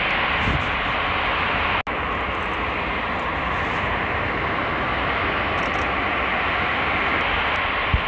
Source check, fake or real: real